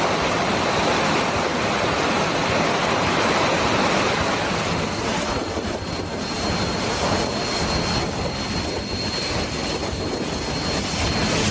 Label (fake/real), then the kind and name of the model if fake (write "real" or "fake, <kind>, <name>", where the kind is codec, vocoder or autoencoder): real